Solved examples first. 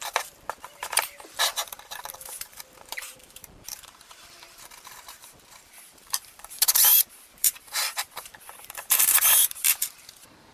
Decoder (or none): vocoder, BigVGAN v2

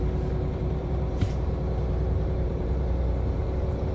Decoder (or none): vocoder, BigVGAN v2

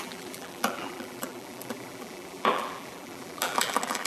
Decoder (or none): vocoder, BigVGAN v2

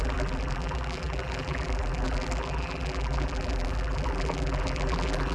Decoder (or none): vocoder, BigVGAN v2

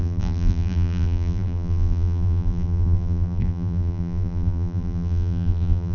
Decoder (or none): vocoder, BigVGAN v2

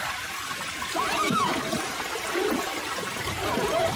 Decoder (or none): vocoder, BigVGAN v2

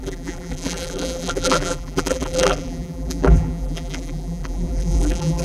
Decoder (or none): vocoder, BigVGAN v2